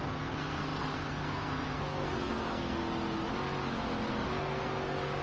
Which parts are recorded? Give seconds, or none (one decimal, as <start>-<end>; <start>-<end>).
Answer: 2.8-4.1